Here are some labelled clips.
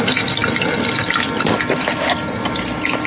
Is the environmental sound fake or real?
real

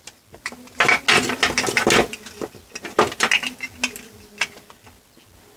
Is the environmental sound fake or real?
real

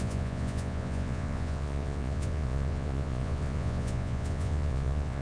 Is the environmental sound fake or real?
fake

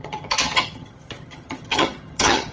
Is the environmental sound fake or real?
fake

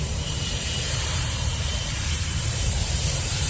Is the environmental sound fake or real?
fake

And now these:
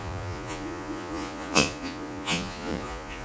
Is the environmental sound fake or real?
fake